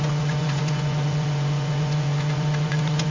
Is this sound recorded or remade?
remade